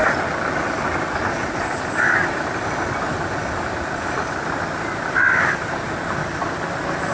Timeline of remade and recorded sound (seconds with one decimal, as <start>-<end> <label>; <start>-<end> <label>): 0.0-7.1 recorded